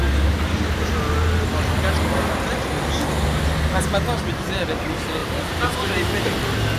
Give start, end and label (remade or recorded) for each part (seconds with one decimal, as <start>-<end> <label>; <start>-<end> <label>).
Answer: 0.0-5.2 recorded; 5.2-6.3 remade; 6.3-6.8 recorded